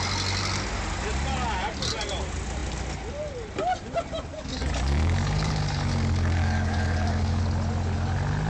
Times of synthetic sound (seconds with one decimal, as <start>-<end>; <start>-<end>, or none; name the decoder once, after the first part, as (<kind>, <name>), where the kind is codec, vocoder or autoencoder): 4.3-7.4 (codec, DAC)